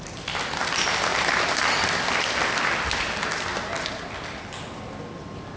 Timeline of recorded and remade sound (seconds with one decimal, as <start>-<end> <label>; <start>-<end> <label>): 0.0-1.1 recorded; 1.1-1.7 remade; 1.7-5.6 recorded